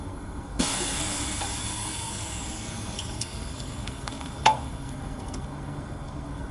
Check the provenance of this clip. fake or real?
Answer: fake